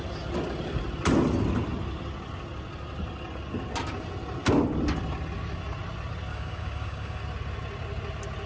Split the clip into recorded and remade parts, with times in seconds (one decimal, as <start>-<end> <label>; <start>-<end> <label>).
0.0-6.3 recorded; 6.3-7.2 remade; 7.2-8.5 recorded